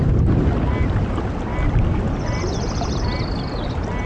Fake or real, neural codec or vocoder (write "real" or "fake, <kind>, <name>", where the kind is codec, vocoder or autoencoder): real